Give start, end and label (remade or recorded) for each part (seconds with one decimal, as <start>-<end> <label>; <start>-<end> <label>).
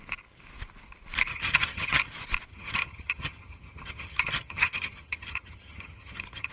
0.0-1.3 recorded; 1.3-2.1 remade; 2.1-2.5 recorded; 2.5-6.5 remade